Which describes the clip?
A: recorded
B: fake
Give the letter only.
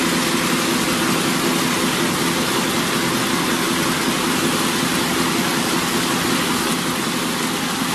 A